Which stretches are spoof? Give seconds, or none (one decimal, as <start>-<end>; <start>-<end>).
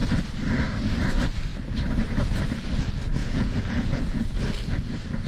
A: 3.2-4.4